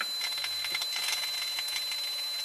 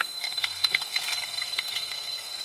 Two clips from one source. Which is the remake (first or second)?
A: second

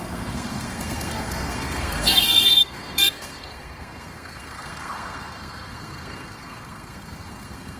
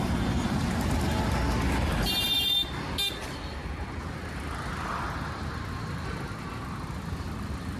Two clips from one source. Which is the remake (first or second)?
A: first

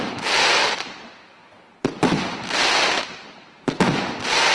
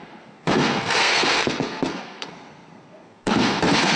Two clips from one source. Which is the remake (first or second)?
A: second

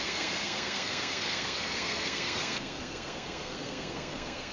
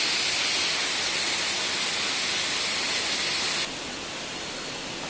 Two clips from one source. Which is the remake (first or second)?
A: first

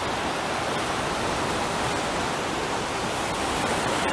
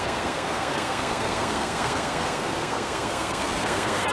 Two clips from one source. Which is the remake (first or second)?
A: second